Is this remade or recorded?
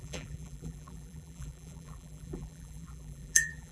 remade